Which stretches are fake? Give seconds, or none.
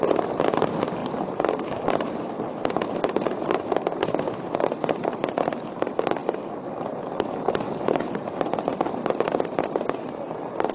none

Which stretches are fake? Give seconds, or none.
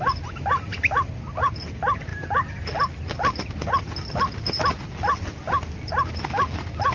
none